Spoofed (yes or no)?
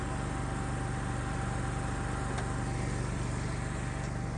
no